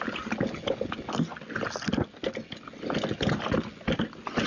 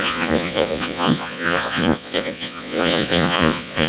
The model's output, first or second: second